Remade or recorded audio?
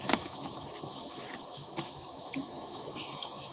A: remade